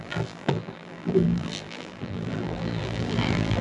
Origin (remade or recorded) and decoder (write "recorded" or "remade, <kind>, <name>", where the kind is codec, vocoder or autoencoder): remade, vocoder, BigVGAN v2